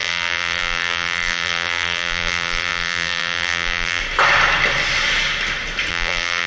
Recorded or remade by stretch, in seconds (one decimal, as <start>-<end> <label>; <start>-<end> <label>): 0.0-4.0 remade; 4.0-5.9 recorded; 5.9-6.5 remade